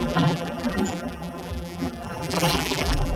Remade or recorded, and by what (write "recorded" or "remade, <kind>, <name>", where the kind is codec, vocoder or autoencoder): remade, vocoder, BigVGAN v2